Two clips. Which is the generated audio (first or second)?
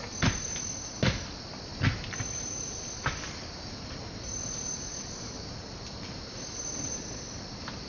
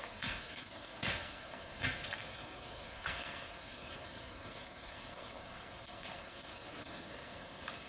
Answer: second